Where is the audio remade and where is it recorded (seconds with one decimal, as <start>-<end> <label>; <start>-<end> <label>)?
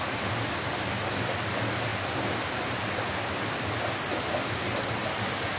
0.0-5.6 recorded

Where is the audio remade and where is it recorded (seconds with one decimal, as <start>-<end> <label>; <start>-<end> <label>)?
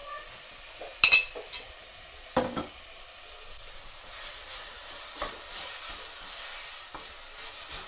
0.0-0.6 remade; 0.6-7.9 recorded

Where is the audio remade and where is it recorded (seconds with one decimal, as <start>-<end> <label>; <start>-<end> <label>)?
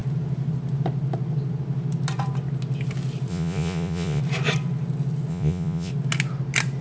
0.0-3.3 recorded; 3.3-4.2 remade; 4.2-5.3 recorded; 5.3-5.9 remade; 5.9-6.8 recorded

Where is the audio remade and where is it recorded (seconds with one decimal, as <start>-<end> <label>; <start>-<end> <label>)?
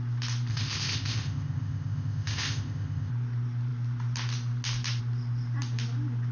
0.0-0.5 recorded; 0.5-3.1 remade; 3.1-6.3 recorded